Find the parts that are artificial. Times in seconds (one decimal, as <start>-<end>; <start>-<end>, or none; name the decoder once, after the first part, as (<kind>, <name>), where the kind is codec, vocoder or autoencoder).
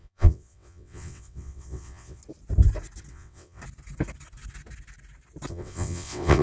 0.0-2.2 (vocoder, WaveNeXt); 3.1-3.6; 5.5-6.4